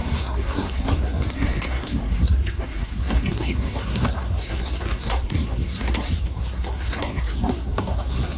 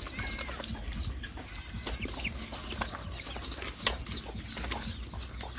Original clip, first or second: second